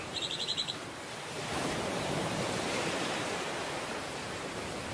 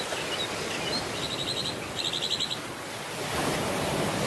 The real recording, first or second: second